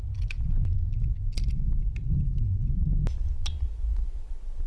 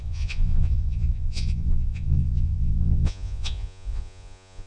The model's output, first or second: second